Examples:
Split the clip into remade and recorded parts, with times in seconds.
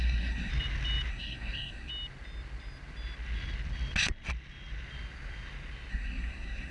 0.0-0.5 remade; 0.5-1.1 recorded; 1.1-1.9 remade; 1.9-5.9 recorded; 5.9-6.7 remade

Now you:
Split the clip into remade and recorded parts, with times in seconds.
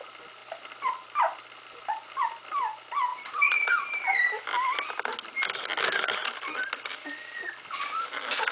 0.0-3.1 recorded; 3.1-4.4 remade; 4.4-8.5 recorded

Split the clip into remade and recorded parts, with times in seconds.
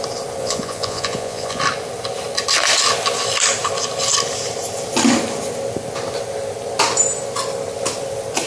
0.0-0.4 recorded; 0.4-1.6 remade; 1.6-8.5 recorded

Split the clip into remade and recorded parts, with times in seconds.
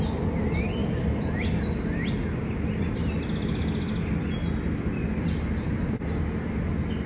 0.0-7.1 recorded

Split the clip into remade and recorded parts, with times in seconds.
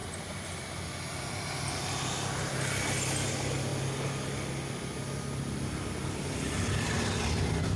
0.0-7.8 recorded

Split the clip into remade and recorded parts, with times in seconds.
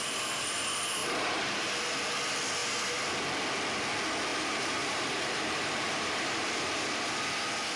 0.0-1.0 recorded; 1.0-1.7 remade; 1.7-4.3 recorded; 4.3-7.2 remade; 7.2-7.8 recorded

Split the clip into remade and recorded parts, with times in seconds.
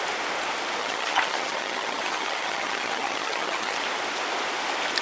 0.0-0.8 recorded; 0.8-3.8 remade; 3.8-5.0 recorded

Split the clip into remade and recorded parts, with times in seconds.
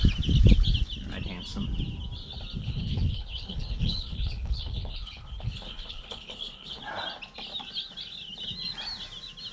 0.0-2.6 recorded; 2.6-6.8 remade; 6.8-9.5 recorded